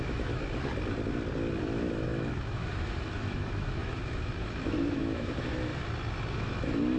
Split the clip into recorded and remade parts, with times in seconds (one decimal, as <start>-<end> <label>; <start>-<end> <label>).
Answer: 0.0-0.4 remade; 0.4-1.6 recorded; 1.6-5.7 remade; 5.7-6.3 recorded; 6.3-7.0 remade